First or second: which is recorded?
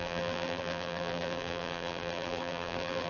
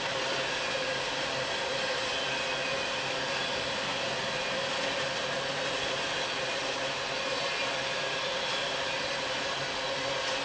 second